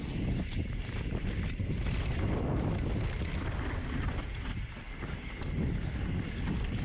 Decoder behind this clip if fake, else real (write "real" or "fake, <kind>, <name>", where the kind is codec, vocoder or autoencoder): real